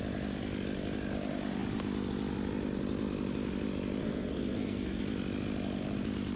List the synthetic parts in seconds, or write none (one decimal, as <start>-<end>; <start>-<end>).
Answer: 4.0-5.0

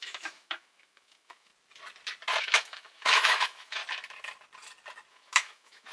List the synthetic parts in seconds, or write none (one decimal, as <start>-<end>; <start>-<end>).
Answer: 0.0-1.5; 2.4-3.8; 5.1-5.9

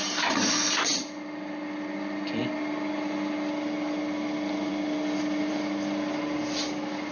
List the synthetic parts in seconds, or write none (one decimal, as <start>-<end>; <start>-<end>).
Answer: none

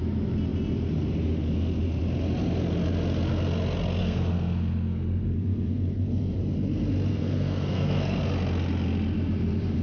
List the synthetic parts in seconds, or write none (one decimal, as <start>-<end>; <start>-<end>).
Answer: 4.0-6.4; 7.1-8.2

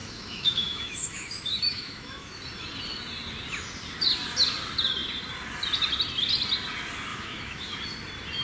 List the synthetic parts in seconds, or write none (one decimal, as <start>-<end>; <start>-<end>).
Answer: 0.0-2.4; 7.1-7.8

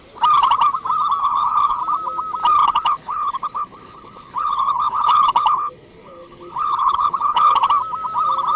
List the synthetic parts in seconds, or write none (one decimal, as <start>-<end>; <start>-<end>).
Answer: 1.2-1.8; 2.6-7.7

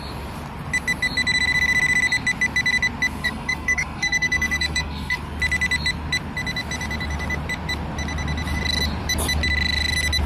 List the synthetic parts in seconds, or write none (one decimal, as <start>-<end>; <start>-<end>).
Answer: 3.2-5.2